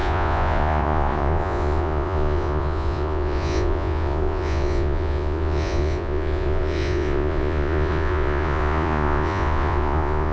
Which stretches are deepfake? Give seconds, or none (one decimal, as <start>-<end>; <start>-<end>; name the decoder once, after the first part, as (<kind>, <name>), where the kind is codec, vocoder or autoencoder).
0.0-10.3 (vocoder, Vocos)